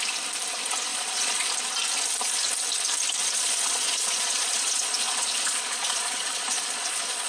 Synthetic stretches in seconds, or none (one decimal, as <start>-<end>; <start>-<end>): 0.9-1.5; 3.2-7.3